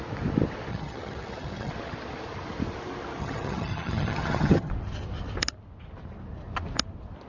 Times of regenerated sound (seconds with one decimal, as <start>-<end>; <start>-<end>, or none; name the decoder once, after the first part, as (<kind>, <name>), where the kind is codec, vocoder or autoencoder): 0.7-1.7 (vocoder, HiFi-GAN); 3.2-4.7